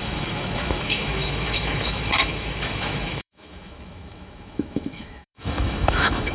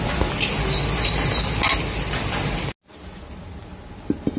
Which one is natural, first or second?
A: second